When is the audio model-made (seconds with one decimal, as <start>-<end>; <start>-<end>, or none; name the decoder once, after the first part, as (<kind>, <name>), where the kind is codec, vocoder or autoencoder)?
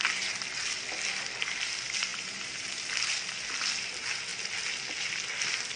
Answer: 2.1-2.8 (vocoder, BigVGAN v2)